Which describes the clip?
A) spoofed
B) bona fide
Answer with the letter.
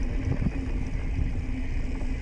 B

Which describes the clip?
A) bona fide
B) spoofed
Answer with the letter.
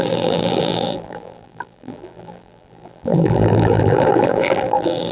B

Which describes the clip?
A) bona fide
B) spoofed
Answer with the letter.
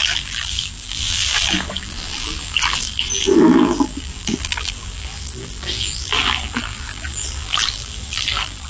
B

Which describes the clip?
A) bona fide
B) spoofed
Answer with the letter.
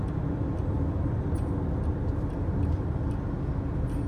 A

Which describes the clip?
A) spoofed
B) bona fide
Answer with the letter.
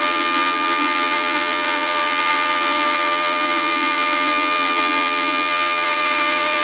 A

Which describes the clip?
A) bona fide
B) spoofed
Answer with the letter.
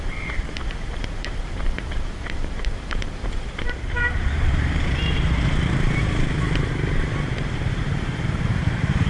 B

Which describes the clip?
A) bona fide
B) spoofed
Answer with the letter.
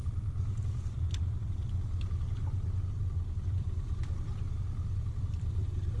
B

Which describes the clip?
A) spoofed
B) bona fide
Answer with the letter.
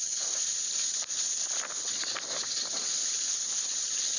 A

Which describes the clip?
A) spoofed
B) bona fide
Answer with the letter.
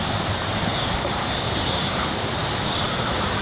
A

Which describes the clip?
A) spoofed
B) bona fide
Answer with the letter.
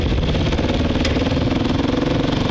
B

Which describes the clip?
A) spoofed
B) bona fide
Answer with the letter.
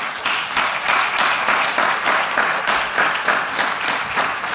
B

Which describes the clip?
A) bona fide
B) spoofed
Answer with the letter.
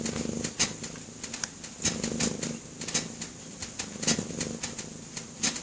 A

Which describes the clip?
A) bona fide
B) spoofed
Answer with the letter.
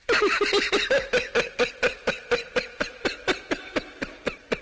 A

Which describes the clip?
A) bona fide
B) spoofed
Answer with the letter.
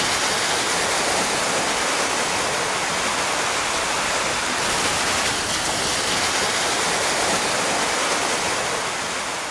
A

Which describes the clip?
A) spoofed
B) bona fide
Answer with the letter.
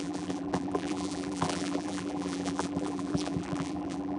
A